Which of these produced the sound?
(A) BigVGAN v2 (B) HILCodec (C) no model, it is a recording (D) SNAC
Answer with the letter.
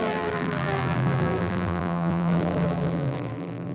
A